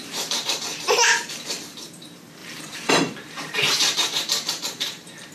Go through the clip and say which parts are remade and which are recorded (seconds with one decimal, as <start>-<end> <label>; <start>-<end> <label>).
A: 0.0-5.3 remade